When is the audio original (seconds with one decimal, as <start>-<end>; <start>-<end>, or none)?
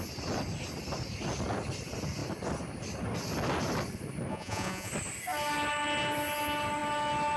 0.0-4.3; 4.9-7.4